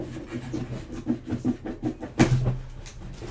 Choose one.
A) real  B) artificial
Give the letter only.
A